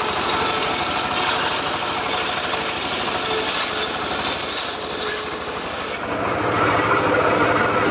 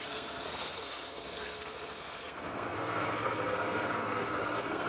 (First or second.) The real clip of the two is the first